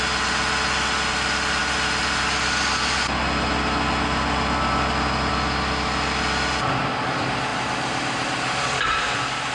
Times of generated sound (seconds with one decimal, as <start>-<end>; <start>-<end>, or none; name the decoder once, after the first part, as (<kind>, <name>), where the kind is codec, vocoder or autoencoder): none